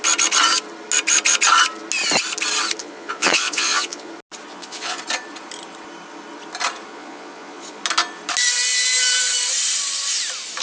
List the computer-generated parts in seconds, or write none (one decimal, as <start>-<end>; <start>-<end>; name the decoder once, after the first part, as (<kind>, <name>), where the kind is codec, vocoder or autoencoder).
2.8-4.1 (vocoder, Vocos); 4.5-5.0; 6.9-7.8